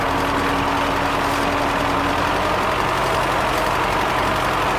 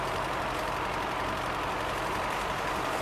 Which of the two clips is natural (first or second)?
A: first